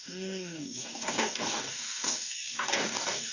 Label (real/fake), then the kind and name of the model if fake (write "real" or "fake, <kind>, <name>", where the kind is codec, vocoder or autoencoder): fake, codec, DAC